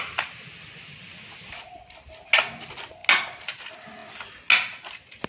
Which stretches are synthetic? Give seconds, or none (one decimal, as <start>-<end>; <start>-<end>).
none